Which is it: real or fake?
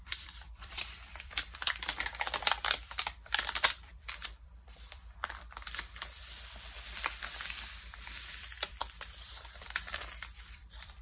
fake